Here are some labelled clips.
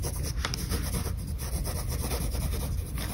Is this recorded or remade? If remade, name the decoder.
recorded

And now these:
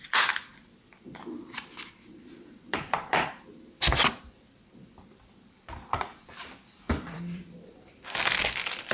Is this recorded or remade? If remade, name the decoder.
remade, vocoder, BigVGAN v2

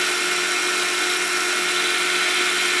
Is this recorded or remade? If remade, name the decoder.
recorded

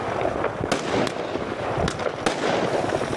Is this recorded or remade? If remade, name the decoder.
recorded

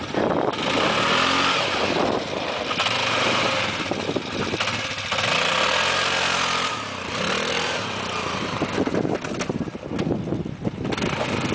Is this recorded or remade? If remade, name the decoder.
recorded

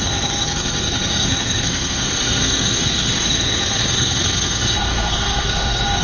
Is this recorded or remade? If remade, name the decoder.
remade, codec, SNAC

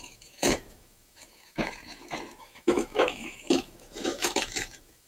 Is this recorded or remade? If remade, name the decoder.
remade, autoencoder, DAC-VAE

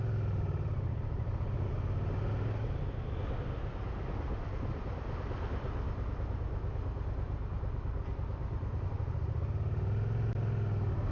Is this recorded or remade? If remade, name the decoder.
recorded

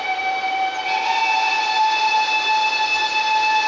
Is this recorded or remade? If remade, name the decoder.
recorded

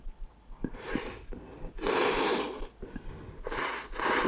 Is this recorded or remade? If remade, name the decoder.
recorded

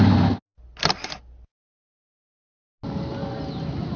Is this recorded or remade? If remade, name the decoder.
recorded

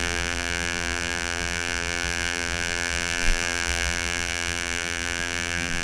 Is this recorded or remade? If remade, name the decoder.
remade, vocoder, BigVGAN v2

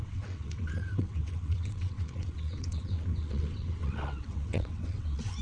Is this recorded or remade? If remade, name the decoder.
remade, vocoder, WaveNeXt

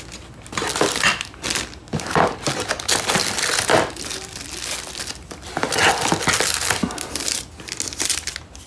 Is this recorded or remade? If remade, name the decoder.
recorded